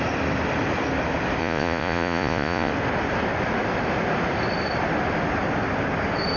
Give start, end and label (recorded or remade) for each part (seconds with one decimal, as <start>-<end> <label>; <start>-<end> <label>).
0.0-1.4 recorded; 1.4-2.7 remade; 2.7-6.4 recorded